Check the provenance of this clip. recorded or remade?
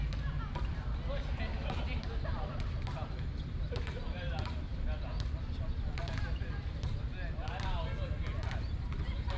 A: recorded